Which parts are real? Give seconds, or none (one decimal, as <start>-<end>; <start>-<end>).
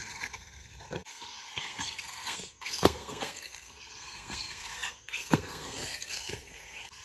none